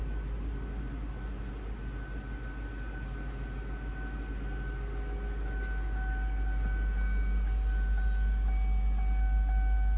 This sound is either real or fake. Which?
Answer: real